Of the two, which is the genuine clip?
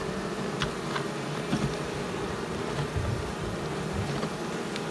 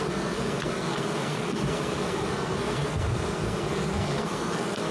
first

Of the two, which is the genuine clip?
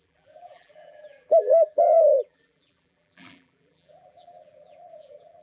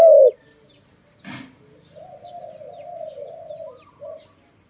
second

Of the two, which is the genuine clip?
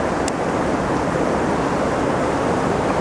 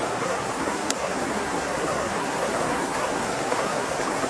first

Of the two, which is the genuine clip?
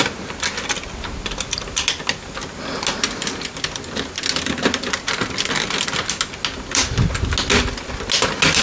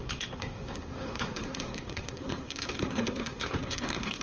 first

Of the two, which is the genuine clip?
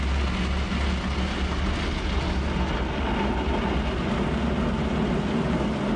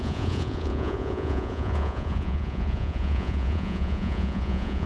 first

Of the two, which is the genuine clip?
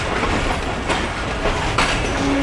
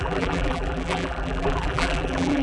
first